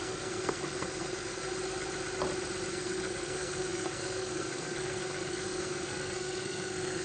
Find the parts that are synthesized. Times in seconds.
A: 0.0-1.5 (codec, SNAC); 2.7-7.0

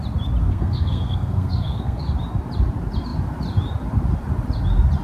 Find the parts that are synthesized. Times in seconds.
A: 0.4-2.0 (codec, SNAC)

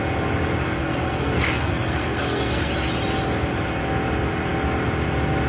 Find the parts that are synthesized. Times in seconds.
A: 0.8-2.7 (codec, SNAC)